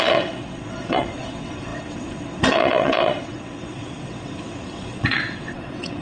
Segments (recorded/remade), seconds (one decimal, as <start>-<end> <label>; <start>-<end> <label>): 0.0-6.0 remade